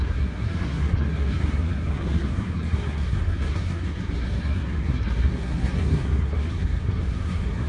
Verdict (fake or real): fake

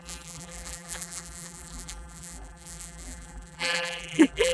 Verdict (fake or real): fake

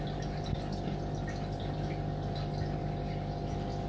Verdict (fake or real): real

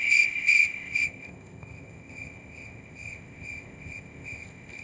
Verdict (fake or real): fake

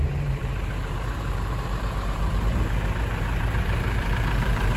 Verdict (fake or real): fake